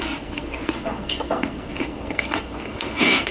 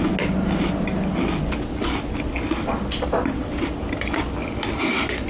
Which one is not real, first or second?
first